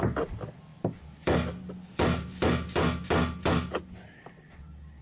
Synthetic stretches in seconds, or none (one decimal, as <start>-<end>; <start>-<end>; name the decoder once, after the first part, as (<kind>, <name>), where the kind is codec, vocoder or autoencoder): none